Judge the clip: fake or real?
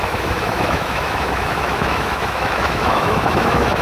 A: fake